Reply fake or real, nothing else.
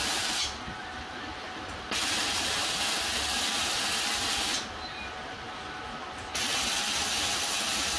real